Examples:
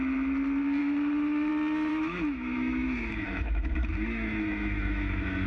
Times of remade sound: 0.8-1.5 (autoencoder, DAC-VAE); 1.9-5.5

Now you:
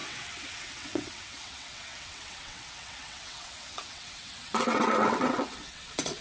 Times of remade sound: 0.0-6.2 (vocoder, WaveNeXt)

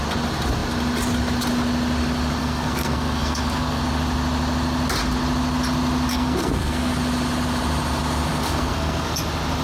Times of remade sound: 2.4-3.8 (codec, SNAC); 6.1-6.9; 8.3-9.2

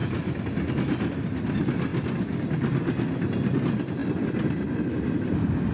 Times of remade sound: none